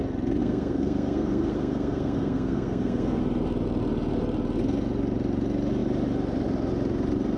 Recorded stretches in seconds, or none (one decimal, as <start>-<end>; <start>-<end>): 0.0-0.4; 3.2-7.4